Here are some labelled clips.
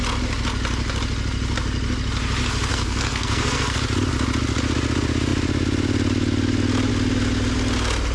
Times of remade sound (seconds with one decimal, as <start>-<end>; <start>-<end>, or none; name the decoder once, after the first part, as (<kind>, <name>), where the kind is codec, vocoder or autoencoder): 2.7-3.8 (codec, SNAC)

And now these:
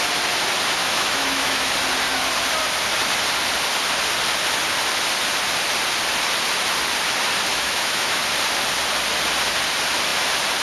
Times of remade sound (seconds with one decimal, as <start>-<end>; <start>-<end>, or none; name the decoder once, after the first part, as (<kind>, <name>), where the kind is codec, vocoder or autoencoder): 0.8-1.7 (autoencoder, DAC-VAE); 7.5-8.2

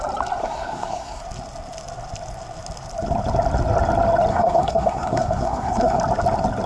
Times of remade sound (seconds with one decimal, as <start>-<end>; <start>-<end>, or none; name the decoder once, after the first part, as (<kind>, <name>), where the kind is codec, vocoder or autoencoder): 0.4-1.2 (codec, SNAC); 4.3-6.0

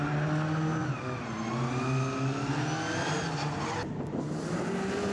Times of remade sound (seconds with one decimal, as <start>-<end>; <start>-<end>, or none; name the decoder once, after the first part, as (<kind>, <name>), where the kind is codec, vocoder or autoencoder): none

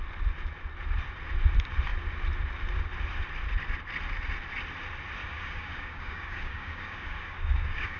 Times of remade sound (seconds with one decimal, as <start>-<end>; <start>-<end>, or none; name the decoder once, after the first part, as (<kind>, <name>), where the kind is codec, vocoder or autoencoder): 5.2-8.0 (codec, DAC)